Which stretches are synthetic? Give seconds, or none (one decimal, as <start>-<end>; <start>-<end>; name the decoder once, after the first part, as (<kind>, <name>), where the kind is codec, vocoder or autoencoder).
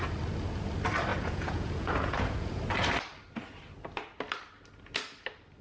1.1-2.6 (vocoder, Vocos)